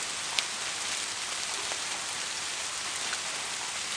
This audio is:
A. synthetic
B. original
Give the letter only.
B